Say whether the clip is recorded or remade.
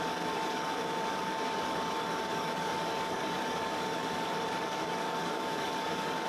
remade